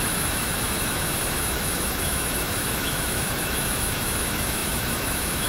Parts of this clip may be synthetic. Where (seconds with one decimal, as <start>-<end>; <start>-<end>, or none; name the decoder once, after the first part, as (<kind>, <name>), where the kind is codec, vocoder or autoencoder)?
0.0-5.5 (autoencoder, DAC-VAE)